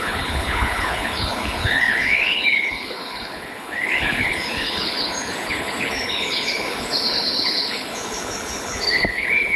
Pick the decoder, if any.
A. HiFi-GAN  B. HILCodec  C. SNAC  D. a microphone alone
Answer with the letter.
B